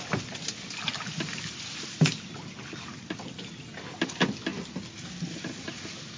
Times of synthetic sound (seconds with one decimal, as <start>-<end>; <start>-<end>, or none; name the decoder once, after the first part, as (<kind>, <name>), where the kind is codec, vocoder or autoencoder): none